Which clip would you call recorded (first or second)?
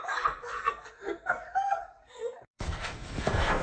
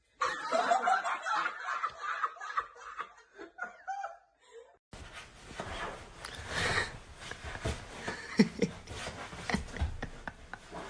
second